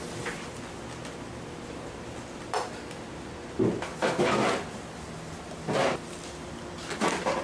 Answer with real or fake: real